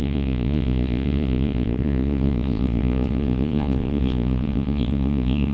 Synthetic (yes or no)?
yes